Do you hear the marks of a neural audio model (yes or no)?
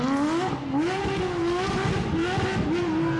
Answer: no